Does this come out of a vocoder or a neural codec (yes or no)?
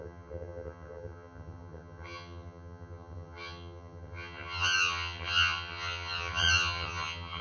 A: yes